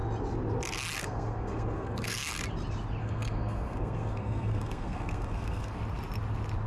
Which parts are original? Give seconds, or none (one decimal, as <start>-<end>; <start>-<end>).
0.0-1.0; 2.3-3.0; 5.8-6.7